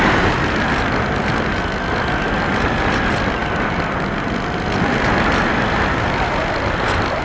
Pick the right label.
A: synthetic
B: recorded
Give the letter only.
B